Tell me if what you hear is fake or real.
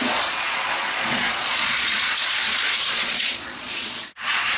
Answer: fake